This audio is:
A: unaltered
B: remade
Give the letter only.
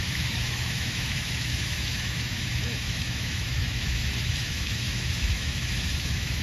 B